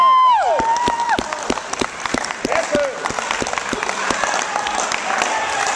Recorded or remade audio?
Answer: recorded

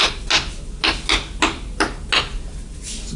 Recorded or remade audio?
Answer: recorded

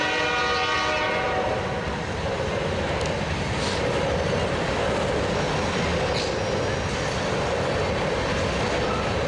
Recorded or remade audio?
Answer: recorded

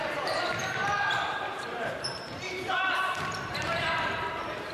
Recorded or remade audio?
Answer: remade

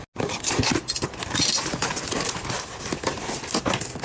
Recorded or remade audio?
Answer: recorded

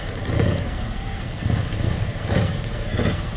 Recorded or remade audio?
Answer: remade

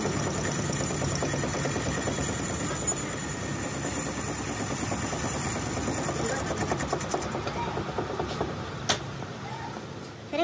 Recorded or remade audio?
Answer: recorded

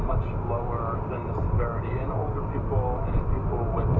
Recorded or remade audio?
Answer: recorded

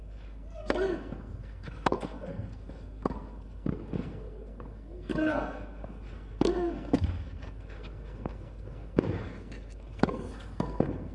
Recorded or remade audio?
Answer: remade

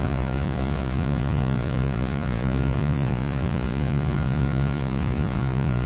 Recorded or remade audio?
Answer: remade